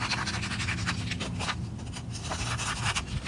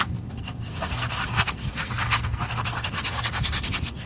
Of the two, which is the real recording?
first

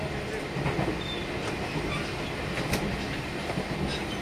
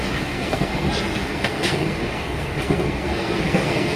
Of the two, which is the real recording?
first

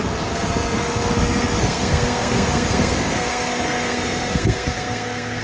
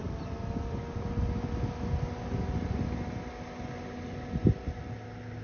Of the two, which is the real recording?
second